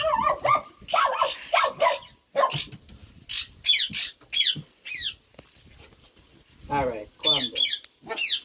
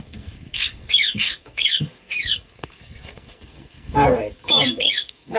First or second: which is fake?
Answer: second